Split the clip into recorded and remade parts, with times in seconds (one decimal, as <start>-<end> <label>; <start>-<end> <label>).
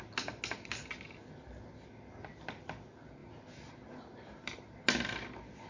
0.0-5.7 recorded